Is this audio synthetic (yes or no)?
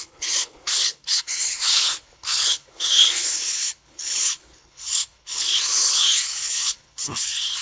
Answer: yes